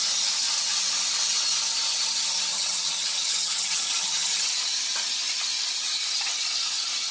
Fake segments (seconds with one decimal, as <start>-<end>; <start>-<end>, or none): 2.5-4.3